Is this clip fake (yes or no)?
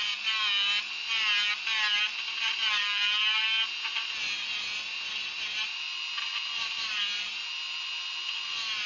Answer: no